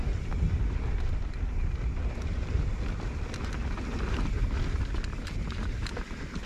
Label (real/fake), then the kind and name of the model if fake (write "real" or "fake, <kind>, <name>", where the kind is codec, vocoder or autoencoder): real